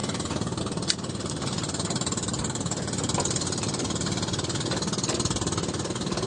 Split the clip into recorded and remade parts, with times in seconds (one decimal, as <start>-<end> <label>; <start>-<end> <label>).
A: 0.0-6.3 recorded